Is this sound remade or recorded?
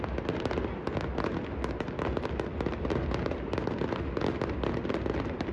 recorded